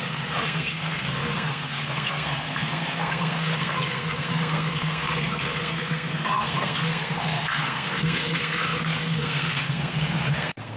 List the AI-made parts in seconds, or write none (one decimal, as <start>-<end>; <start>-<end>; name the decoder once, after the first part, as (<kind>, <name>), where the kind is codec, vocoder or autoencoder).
0.0-10.8 (codec, SNAC)

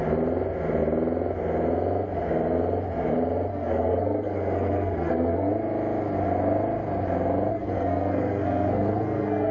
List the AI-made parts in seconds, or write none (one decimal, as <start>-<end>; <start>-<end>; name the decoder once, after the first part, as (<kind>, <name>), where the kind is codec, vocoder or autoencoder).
3.5-5.5 (codec, SNAC); 7.5-9.5